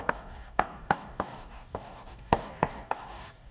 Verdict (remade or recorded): remade